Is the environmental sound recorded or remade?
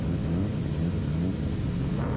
recorded